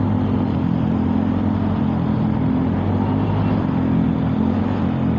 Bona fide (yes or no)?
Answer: yes